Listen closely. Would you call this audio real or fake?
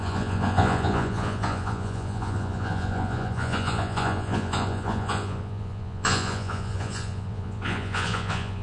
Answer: fake